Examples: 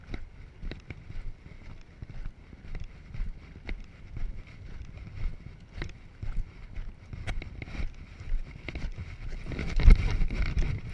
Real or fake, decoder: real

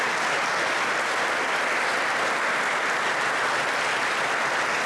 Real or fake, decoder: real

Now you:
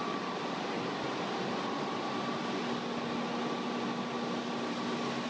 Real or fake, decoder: real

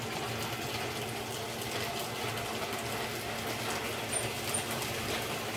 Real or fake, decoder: real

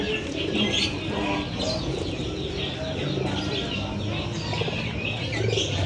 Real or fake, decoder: real